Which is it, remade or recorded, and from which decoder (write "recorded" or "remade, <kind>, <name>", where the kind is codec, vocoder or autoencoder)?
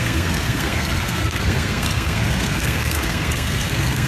remade, codec, SNAC